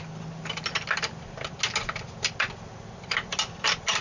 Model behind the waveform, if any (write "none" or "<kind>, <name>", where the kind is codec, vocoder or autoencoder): none